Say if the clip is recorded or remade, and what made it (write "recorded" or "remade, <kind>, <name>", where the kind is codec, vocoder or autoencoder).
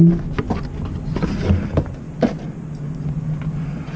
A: recorded